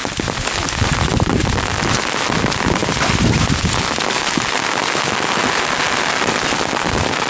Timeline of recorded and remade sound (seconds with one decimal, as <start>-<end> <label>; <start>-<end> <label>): 0.0-7.3 recorded